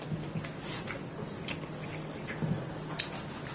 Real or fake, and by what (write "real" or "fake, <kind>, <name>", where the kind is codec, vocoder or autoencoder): real